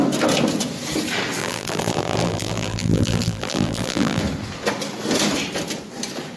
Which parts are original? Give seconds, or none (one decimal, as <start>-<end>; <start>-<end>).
0.0-1.4; 4.2-6.4

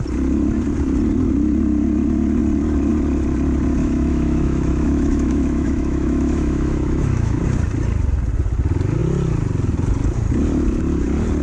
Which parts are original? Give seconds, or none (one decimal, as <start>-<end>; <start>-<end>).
0.0-3.8; 7.4-11.4

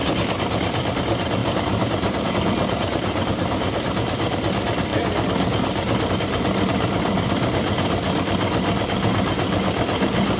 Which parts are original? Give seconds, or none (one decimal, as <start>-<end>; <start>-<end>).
0.0-10.4

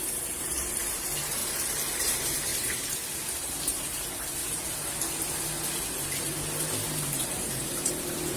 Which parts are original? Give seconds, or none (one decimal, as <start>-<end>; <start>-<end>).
1.4-2.0; 4.4-7.9

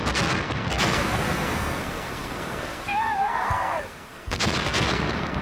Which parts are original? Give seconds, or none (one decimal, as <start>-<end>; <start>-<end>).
none